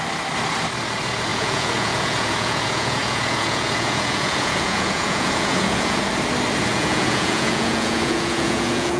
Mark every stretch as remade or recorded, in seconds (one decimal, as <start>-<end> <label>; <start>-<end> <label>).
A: 0.0-1.3 recorded; 1.3-6.0 remade; 6.0-6.7 recorded; 6.7-9.0 remade